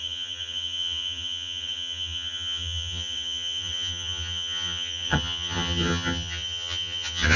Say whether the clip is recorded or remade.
remade